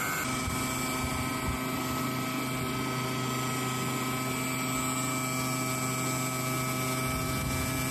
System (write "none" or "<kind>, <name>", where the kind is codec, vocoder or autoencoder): none